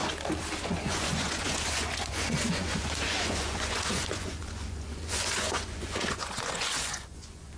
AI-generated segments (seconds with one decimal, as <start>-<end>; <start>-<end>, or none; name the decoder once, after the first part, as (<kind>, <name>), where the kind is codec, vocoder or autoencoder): 0.6-7.6 (vocoder, Vocos)